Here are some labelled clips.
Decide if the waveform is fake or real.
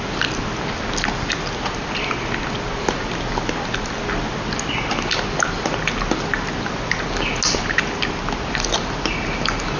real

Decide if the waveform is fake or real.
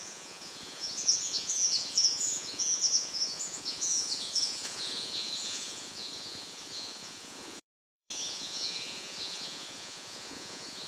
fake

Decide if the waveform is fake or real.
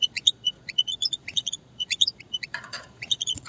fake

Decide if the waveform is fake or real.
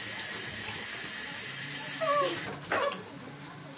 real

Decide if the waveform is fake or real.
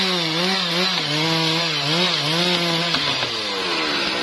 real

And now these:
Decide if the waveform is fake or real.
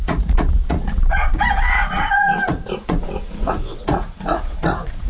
fake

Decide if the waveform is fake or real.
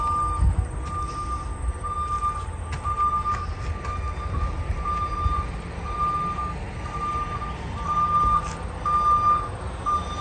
real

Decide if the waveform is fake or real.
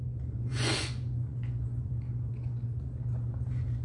fake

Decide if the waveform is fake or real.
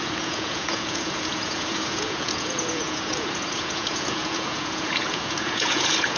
fake